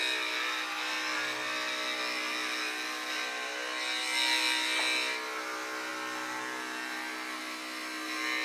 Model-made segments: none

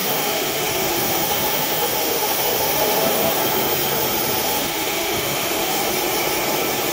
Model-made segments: 0.0-3.4 (autoencoder, DAC-VAE); 4.4-5.8

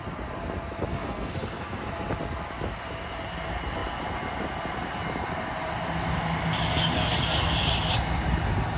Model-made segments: 0.9-1.8 (codec, SNAC)

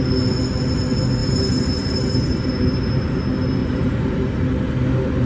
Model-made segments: 1.2-3.2 (vocoder, BigVGAN v2); 3.6-4.3

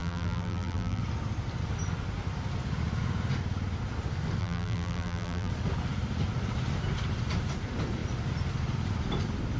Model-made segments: 0.0-1.0 (vocoder, BigVGAN v2); 4.4-5.5

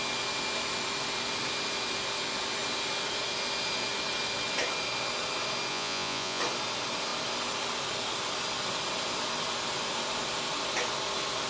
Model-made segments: 5.7-6.4 (vocoder, Vocos)

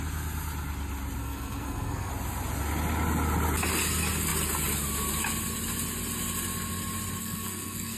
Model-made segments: 1.2-2.1 (codec, SNAC); 7.2-8.0

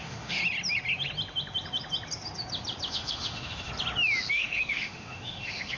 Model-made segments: 0.0-0.4 (autoencoder, DAC-VAE); 2.9-3.7; 4.3-5.8